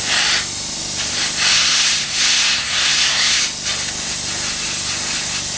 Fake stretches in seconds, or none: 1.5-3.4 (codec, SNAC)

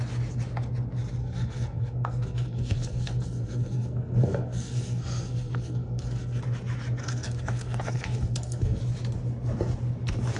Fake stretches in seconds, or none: 1.2-6.4 (codec, SNAC); 7.0-8.8

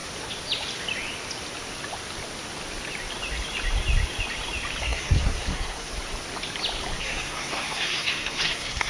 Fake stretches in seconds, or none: 4.8-5.9 (codec, SNAC); 7.0-8.9

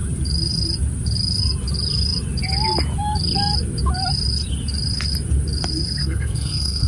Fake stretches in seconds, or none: 6.0-6.9 (codec, SNAC)

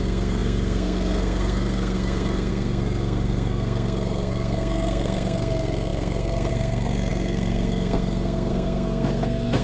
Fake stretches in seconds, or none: 0.0-9.6 (codec, SNAC)

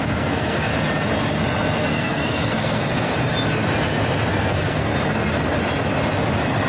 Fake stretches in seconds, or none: 0.0-0.7 (codec, SNAC); 1.9-3.1; 4.3-4.9

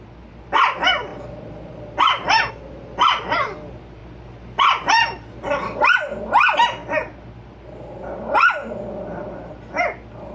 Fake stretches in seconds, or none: none